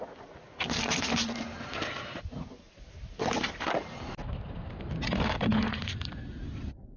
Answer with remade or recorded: recorded